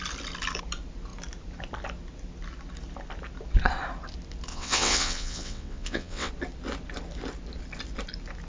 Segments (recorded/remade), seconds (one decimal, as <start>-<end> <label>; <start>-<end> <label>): 0.0-4.5 recorded; 4.5-6.3 remade; 6.3-8.5 recorded